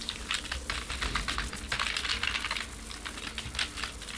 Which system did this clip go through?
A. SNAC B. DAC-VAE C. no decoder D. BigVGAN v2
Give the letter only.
C